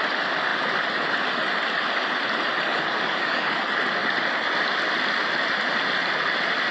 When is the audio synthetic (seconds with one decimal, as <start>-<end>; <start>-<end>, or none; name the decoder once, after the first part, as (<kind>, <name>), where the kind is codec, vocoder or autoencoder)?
2.7-3.6 (codec, DAC)